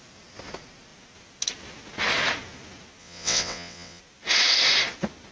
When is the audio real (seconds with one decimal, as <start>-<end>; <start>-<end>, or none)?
0.0-3.0; 4.0-5.3